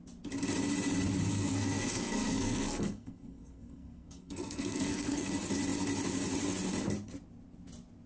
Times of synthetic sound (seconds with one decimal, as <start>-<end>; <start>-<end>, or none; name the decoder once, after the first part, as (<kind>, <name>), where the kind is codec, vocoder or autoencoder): 1.3-5.3 (codec, SNAC)